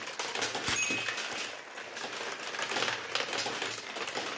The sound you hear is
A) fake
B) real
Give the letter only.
B